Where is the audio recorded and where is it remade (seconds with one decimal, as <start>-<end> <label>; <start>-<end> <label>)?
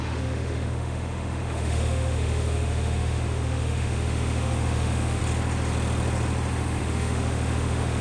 0.0-5.2 remade; 5.2-6.8 recorded; 6.8-8.0 remade